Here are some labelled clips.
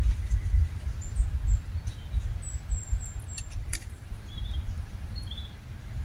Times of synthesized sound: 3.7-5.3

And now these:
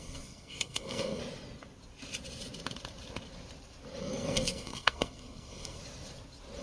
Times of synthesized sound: 0.0-1.2; 4.0-5.8

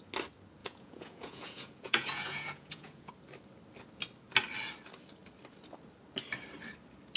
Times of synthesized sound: 0.6-3.1

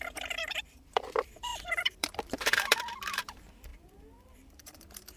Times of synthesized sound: 0.0-5.2

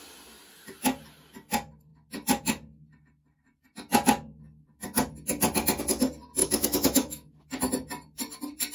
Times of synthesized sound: 6.4-7.3

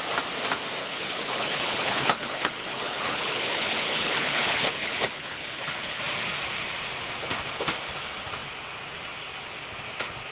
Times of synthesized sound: 0.8-6.0

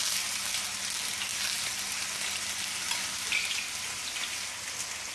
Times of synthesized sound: none

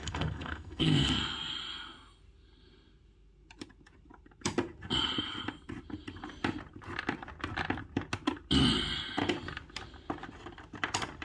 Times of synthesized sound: 0.0-1.2